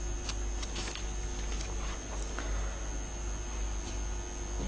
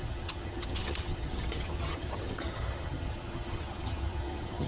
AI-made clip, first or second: second